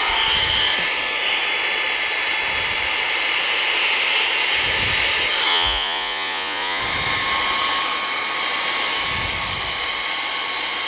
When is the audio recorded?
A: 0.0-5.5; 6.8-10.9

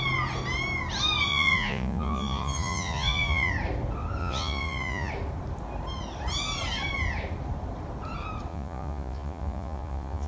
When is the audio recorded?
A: 0.0-1.3; 3.5-4.2; 5.1-8.5

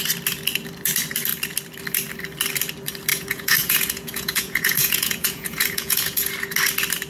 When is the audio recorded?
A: 0.0-3.1; 6.3-7.1

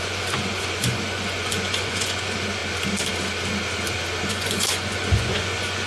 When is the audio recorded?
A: 2.6-4.3

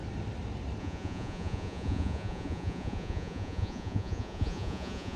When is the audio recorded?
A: 0.0-0.8

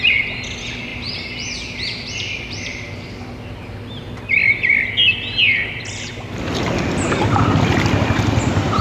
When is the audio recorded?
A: 0.0-8.8

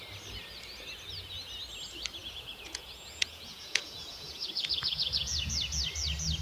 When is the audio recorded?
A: 0.0-2.2; 5.5-6.4